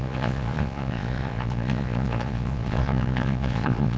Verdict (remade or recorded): remade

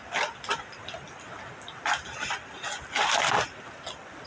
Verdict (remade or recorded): recorded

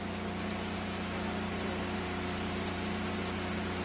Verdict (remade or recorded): recorded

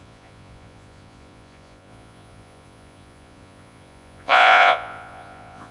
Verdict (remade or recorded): remade